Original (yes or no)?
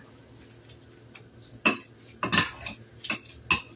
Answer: yes